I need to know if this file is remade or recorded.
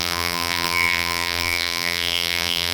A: remade